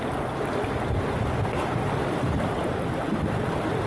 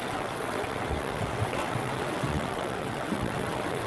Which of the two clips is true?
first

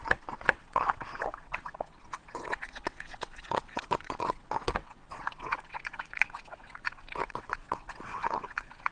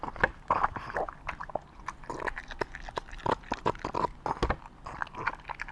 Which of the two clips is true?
second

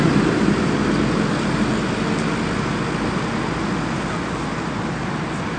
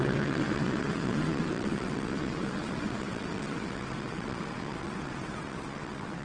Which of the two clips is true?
first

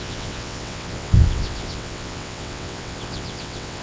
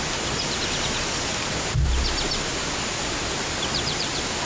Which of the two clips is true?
second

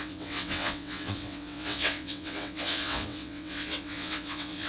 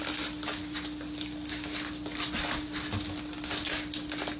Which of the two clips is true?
second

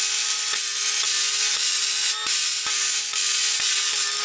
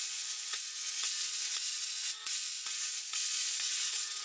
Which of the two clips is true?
first